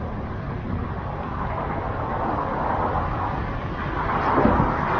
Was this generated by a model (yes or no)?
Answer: no